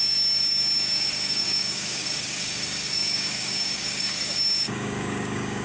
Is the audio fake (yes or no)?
yes